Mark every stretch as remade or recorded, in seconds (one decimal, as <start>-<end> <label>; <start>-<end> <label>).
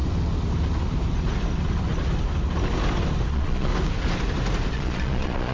0.0-3.3 recorded; 3.3-3.7 remade; 3.7-4.7 recorded; 4.7-5.5 remade